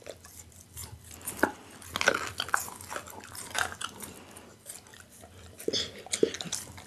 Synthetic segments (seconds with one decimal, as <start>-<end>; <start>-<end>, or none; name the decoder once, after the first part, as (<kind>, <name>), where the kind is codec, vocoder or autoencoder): none